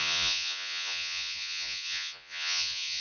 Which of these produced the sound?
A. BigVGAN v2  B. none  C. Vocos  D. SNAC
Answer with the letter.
C